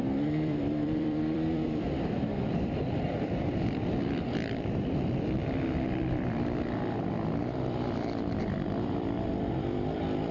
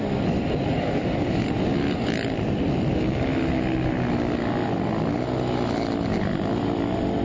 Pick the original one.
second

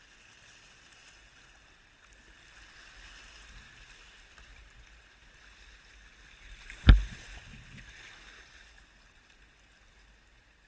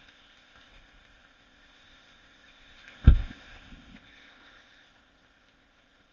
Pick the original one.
first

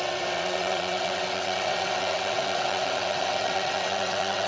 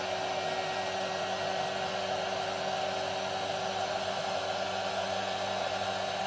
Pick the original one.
second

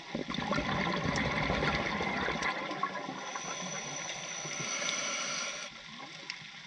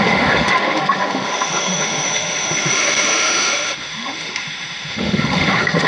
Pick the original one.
first